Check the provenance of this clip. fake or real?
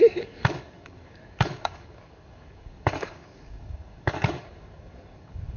fake